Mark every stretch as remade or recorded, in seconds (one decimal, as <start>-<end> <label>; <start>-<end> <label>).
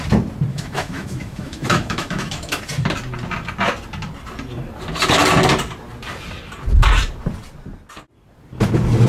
0.0-0.5 recorded; 0.5-2.6 remade; 2.6-9.1 recorded